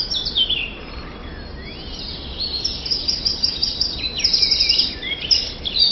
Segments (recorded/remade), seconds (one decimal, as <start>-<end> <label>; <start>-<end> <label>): 0.0-5.9 recorded